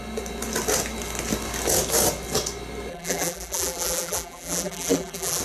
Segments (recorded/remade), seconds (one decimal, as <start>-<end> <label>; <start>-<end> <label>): 0.0-2.9 recorded; 2.9-5.4 remade